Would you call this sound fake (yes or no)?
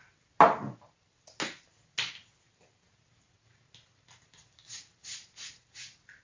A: no